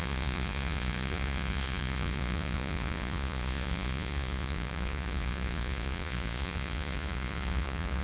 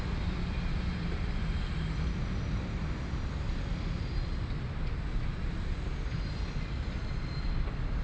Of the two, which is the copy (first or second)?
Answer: first